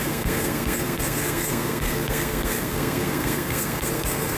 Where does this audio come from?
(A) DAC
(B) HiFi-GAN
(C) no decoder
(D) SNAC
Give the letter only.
D